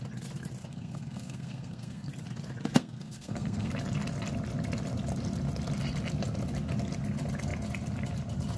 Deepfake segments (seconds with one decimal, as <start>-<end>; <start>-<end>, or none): 0.6-2.1; 2.8-3.7